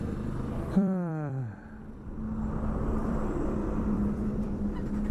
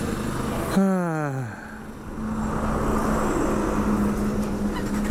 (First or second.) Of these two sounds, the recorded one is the second